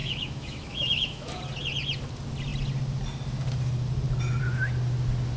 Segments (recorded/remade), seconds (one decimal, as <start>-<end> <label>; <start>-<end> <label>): 0.0-1.4 remade; 1.4-5.4 recorded